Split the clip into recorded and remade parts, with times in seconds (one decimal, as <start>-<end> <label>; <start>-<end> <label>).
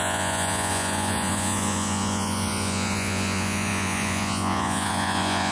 0.0-5.5 remade